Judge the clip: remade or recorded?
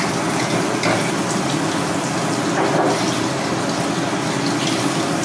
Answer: recorded